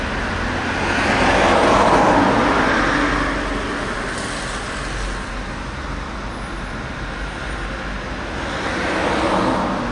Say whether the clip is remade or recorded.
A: recorded